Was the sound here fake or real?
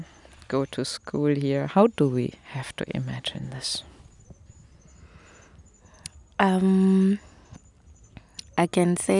real